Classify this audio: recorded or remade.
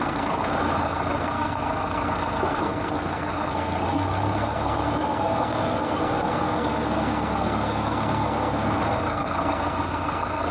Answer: remade